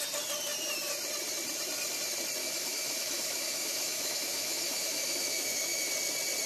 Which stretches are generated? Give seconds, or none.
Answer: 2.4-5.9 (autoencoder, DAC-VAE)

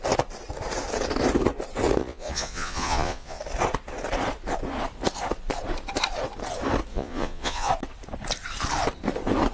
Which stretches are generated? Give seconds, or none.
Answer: 2.0-3.4 (vocoder, Vocos); 6.9-7.7

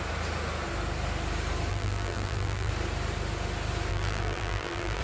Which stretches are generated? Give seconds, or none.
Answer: 1.7-2.7 (vocoder, BigVGAN v2); 3.9-5.0

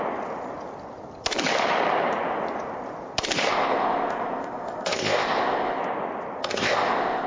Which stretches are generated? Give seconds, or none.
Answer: 3.5-5.8 (codec, ZipCodec); 6.4-7.3

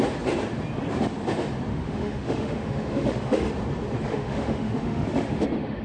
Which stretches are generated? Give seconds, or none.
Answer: 1.7-3.5 (autoencoder, DAC-VAE); 4.1-5.8

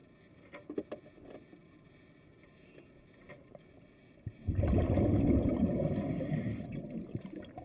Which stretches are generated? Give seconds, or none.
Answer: none

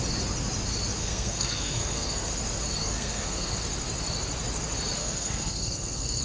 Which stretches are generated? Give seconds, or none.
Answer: 1.0-2.3 (codec, SNAC); 2.8-3.5; 5.0-6.2